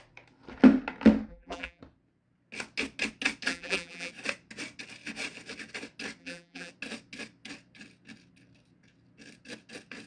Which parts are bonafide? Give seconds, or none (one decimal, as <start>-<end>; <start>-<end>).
0.0-1.3; 1.8-3.5; 4.1-6.2; 6.7-10.1

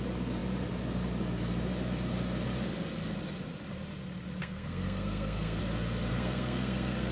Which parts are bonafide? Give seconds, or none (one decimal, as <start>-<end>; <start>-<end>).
0.0-4.4; 5.6-6.1

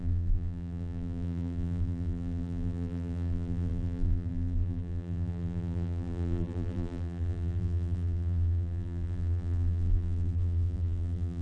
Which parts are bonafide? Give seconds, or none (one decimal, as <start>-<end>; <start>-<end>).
none

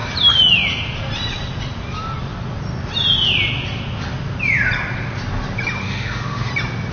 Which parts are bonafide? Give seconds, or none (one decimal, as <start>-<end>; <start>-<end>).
0.0-5.8; 6.5-6.9

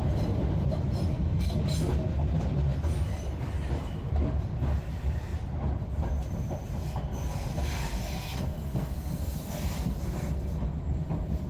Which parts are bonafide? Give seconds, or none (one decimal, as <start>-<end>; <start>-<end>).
0.0-1.1; 1.6-7.3; 10.7-11.5